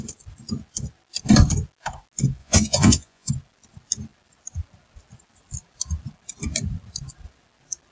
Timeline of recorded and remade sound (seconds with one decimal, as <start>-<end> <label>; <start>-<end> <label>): 0.0-2.4 recorded; 2.4-3.3 remade; 3.3-7.9 recorded